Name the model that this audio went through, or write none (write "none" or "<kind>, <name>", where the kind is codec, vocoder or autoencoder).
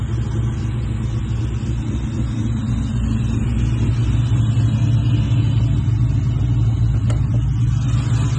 none